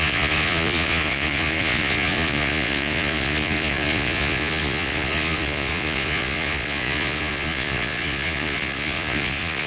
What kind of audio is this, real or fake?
fake